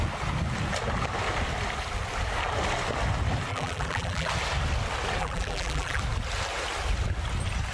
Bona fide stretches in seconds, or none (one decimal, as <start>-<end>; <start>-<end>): 0.0-3.5; 4.3-5.2; 6.0-7.7